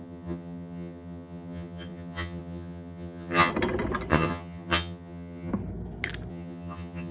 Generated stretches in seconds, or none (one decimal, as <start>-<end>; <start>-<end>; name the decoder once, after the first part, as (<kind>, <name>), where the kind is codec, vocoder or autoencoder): 0.0-3.5 (vocoder, HiFi-GAN); 4.1-5.5; 6.3-7.1